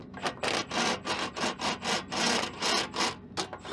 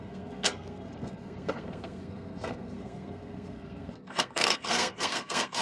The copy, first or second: second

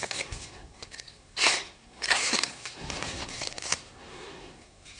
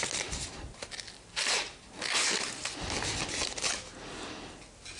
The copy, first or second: first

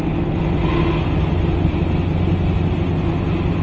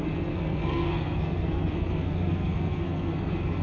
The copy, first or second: second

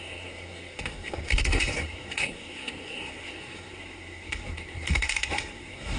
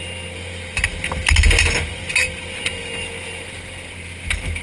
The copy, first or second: first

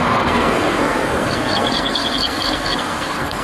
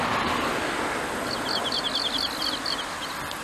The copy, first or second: first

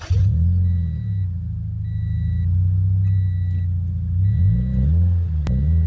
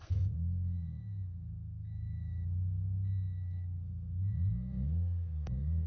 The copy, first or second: second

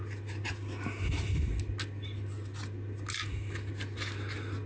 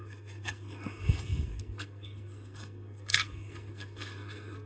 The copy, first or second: second